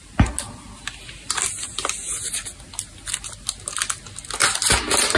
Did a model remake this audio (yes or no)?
no